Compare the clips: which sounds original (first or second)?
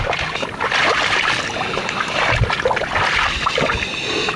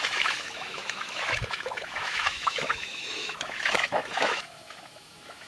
first